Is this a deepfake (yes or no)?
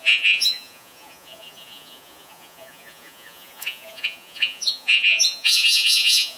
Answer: yes